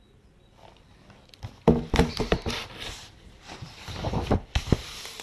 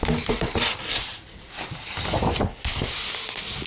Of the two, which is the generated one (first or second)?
first